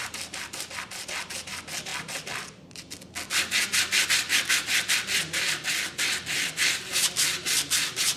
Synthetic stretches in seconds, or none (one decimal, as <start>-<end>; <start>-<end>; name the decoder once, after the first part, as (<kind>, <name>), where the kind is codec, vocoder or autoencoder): none